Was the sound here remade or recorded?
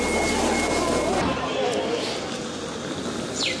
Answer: recorded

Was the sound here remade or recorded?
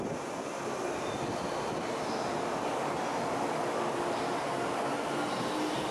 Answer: recorded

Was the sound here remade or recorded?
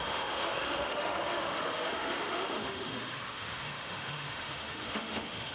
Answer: remade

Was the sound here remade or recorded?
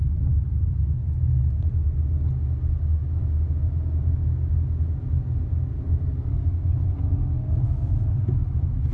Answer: recorded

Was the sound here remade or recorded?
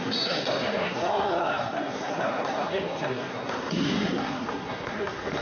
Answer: remade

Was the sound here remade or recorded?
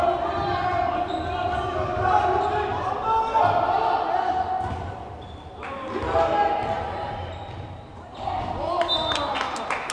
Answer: recorded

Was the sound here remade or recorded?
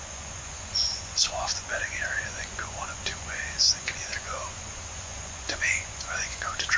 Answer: remade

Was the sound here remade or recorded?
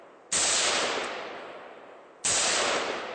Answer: recorded